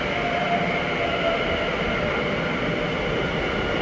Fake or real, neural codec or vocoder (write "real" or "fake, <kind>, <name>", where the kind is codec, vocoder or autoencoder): real